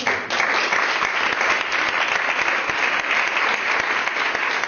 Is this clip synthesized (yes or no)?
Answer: no